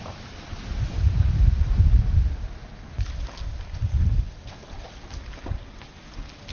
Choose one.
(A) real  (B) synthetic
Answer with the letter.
A